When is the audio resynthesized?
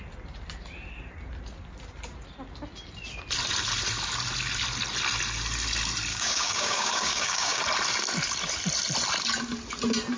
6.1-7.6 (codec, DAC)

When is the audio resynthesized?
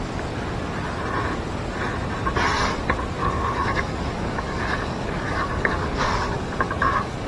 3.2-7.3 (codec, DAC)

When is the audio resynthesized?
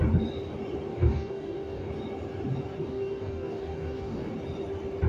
0.9-1.9 (codec, DAC); 2.8-4.3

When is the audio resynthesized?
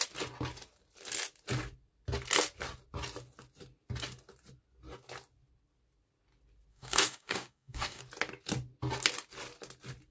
6.7-8.0 (codec, DAC)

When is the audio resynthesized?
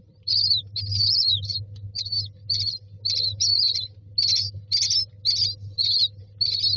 none